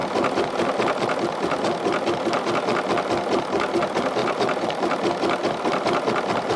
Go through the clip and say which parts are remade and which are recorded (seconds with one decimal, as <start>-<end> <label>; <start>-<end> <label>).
0.0-4.2 recorded; 4.2-5.2 remade; 5.2-6.6 recorded